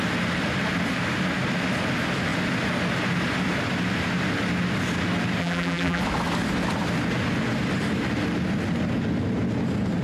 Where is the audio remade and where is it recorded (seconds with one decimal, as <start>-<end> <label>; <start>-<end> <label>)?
0.0-5.4 recorded; 5.4-6.0 remade; 6.0-10.0 recorded